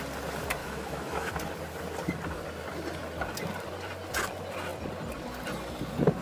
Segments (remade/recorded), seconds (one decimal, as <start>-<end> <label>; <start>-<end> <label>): 0.0-0.6 recorded; 0.6-1.3 remade; 1.3-6.2 recorded